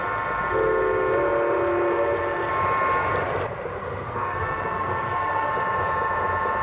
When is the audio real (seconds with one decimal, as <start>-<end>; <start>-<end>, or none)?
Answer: 0.0-3.8; 5.5-6.6